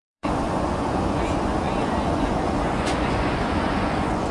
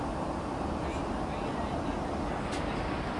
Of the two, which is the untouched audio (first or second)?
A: second